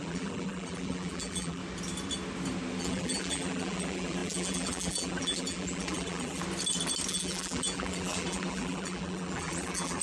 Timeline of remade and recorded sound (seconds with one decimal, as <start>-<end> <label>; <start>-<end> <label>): 0.0-1.6 remade; 1.6-2.8 recorded; 2.8-6.4 remade; 6.4-7.1 recorded; 7.1-10.0 remade